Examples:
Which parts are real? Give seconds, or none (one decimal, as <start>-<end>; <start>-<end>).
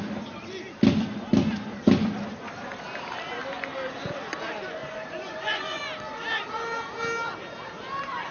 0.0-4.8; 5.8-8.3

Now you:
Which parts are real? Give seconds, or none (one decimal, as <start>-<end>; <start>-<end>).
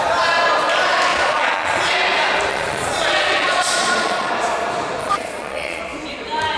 0.0-1.1; 1.9-2.5; 4.3-5.0; 5.8-6.6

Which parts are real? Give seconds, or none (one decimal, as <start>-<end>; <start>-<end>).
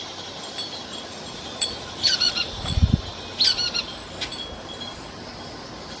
0.0-0.9; 2.8-6.0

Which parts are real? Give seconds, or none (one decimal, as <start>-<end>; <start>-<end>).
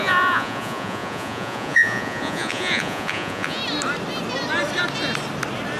3.6-5.8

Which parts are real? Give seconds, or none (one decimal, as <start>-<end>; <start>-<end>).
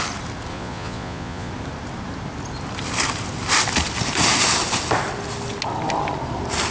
0.0-0.5; 1.5-6.7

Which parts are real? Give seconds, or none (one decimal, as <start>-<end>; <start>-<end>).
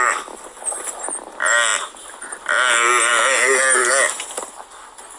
0.0-5.2